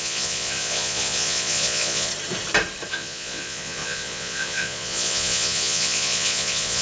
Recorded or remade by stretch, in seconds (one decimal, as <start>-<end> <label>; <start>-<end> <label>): 0.0-2.1 remade; 2.1-2.9 recorded; 2.9-6.8 remade